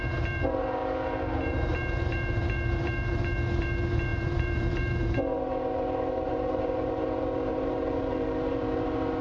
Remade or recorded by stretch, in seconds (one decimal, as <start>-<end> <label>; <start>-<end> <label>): 0.0-0.8 remade; 0.8-1.5 recorded; 1.5-9.2 remade